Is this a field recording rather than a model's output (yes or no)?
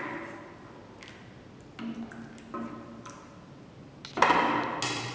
yes